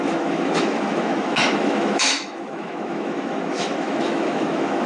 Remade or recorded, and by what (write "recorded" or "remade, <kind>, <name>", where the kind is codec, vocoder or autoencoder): remade, autoencoder, DAC-VAE